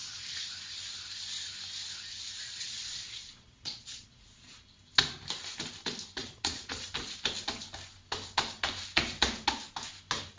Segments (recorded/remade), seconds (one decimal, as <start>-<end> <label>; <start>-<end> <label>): 0.0-0.5 remade; 0.5-2.4 recorded; 2.4-4.6 remade; 4.6-6.2 recorded; 6.2-6.8 remade; 6.8-10.4 recorded